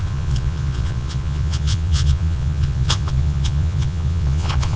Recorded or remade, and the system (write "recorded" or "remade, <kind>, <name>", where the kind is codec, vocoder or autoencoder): remade, vocoder, Vocos